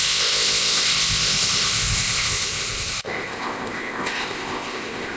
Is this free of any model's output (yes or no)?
no